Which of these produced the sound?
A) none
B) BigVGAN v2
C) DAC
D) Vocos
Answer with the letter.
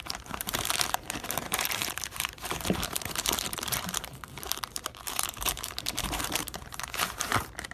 B